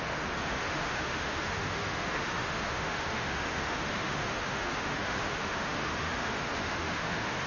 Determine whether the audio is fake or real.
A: fake